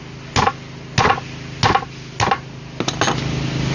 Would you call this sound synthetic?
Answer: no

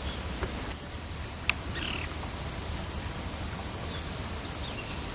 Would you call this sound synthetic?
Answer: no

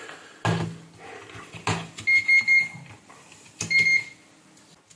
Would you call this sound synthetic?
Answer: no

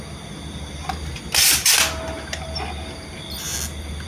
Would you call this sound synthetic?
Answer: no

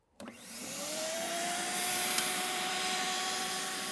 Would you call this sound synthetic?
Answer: yes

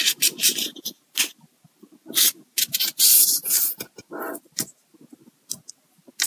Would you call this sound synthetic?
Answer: no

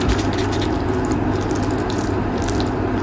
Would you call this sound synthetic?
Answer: no